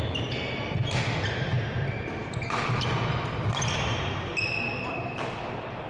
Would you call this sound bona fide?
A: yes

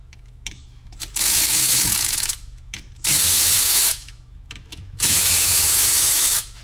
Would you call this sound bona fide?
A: no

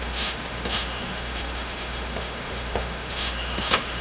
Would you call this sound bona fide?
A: no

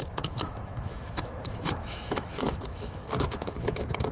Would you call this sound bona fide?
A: no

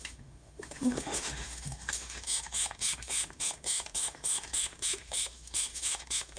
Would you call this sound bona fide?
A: no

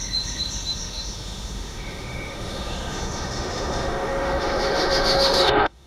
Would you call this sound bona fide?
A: no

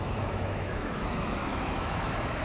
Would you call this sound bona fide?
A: no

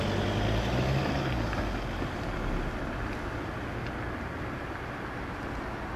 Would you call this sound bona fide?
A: yes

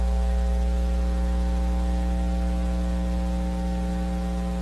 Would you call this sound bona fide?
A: yes